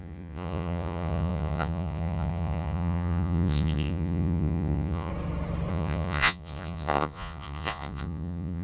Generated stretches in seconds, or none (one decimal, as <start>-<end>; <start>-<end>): 0.0-5.1; 5.7-8.6